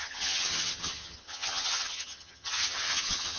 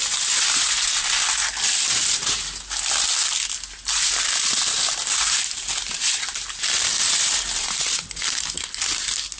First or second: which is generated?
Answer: first